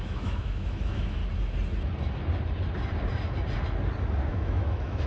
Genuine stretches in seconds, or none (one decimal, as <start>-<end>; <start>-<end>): 1.2-4.3